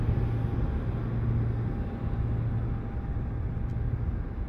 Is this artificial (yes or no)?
no